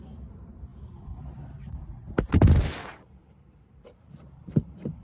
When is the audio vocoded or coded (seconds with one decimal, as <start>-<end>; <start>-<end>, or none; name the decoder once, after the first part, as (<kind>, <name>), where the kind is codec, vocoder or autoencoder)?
3.2-5.0 (vocoder, BigVGAN v2)

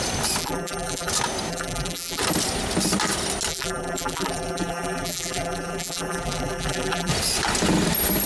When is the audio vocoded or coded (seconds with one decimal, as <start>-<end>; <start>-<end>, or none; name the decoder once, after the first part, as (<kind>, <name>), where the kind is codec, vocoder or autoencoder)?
0.4-1.1 (vocoder, BigVGAN v2); 1.5-2.2; 3.5-7.1

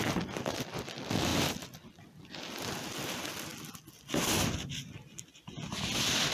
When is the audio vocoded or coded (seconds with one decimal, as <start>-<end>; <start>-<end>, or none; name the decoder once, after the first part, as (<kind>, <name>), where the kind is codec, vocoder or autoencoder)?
none

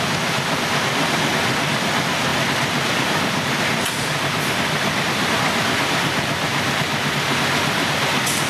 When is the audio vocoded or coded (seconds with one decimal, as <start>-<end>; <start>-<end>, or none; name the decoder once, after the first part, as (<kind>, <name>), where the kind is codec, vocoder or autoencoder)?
2.3-5.3 (vocoder, BigVGAN v2)

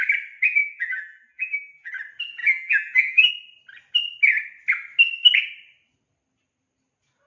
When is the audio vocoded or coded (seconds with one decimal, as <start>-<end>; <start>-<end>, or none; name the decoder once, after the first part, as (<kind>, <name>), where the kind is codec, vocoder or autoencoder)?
0.6-1.9 (vocoder, BigVGAN v2); 2.4-3.3

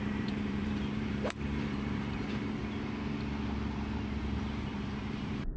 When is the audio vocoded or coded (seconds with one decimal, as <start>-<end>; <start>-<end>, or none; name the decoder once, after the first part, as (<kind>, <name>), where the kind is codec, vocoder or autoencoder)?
0.0-2.6 (vocoder, BigVGAN v2); 4.2-5.6

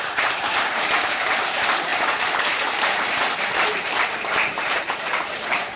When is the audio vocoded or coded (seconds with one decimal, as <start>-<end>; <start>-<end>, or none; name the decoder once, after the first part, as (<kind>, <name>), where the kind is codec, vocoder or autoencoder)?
0.0-5.8 (vocoder, BigVGAN v2)